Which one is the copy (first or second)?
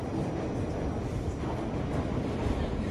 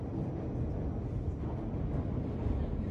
first